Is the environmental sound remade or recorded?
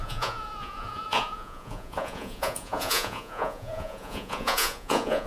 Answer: remade